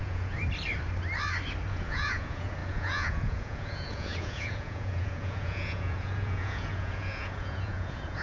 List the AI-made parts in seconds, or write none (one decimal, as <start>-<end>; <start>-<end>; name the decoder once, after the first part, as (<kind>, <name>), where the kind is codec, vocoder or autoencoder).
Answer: 0.0-0.4 (vocoder, Vocos); 1.7-8.2